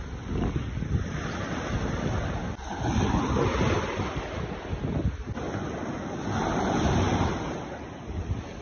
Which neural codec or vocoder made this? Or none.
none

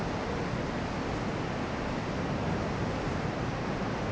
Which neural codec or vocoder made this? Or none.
none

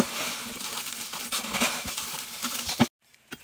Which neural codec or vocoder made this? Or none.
none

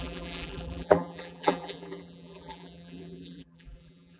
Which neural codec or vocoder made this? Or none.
vocoder, BigVGAN v2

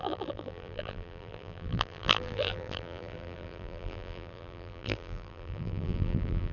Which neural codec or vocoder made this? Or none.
vocoder, BigVGAN v2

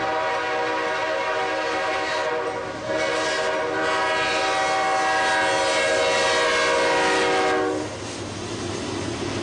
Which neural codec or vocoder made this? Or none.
none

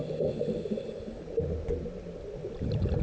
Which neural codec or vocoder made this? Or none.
none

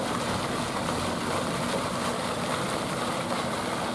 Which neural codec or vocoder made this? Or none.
none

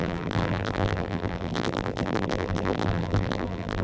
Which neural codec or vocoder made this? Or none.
vocoder, BigVGAN v2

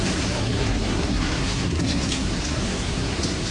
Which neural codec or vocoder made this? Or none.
codec, SNAC